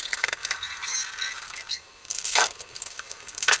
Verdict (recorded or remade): remade